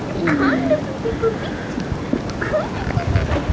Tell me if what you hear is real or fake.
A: real